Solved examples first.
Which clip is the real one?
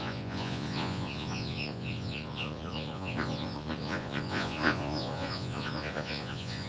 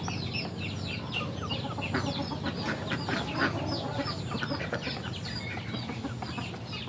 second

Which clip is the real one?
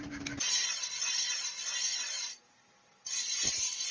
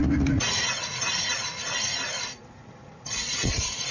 first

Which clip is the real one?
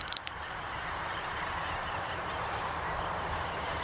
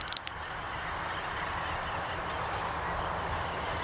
second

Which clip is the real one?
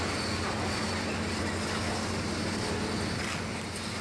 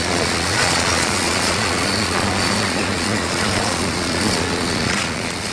first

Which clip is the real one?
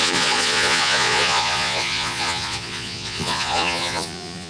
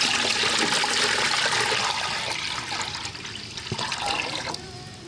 second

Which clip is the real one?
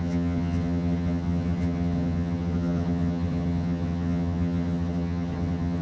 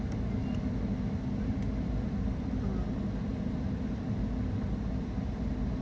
second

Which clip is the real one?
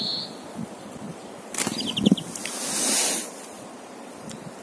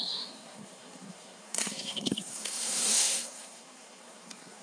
first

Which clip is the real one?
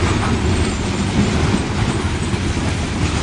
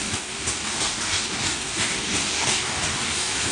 first